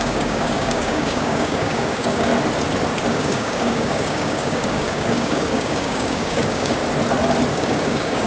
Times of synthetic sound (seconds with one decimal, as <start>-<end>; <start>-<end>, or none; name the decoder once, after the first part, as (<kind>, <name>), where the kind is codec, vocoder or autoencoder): 0.0-2.3 (codec, DAC); 3.1-6.8; 7.5-8.3